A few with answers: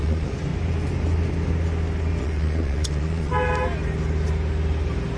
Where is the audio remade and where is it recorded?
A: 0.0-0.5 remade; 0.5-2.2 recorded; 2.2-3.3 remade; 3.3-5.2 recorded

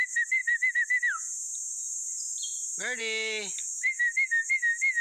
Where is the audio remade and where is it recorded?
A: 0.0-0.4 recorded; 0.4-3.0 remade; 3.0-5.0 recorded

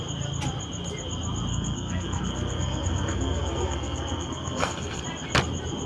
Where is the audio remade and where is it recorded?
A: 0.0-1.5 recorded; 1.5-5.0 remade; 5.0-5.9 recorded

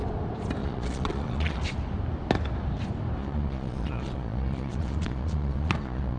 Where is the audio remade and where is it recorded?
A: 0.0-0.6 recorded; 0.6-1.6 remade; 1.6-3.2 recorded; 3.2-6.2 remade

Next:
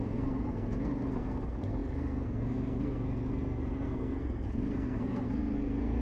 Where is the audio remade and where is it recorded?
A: 0.0-6.0 remade

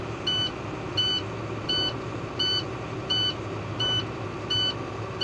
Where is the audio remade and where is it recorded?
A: 0.0-5.2 recorded

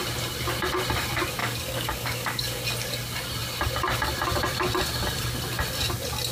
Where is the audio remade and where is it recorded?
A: 0.0-1.4 recorded; 1.4-2.6 remade; 2.6-6.3 recorded